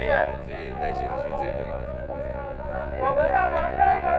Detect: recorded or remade remade